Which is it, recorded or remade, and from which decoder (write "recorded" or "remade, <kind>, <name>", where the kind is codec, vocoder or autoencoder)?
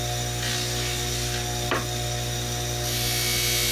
recorded